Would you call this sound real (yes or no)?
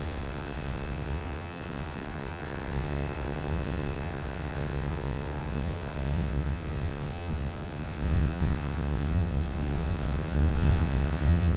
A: no